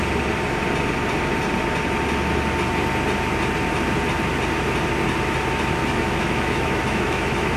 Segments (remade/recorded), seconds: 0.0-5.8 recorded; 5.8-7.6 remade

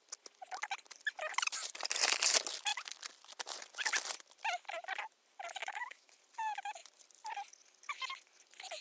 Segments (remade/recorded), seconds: 0.0-5.6 recorded; 5.6-6.1 remade; 6.1-8.8 recorded

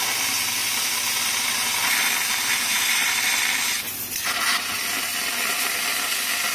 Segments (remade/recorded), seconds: 0.0-6.5 recorded

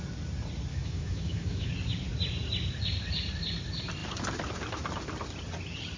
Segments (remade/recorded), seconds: 0.0-0.7 recorded; 0.7-1.7 remade; 1.7-6.0 recorded